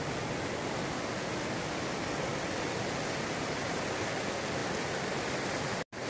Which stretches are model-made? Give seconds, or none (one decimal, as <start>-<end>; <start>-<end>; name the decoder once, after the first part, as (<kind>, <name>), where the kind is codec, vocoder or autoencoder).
none